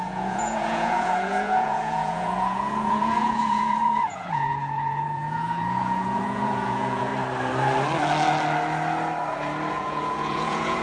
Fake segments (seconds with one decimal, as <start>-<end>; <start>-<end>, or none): 0.0-7.1; 9.7-10.8